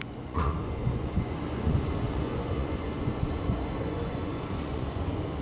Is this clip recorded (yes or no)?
no